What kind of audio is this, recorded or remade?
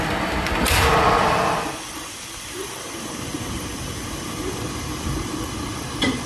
remade